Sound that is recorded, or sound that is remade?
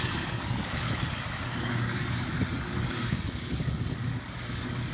remade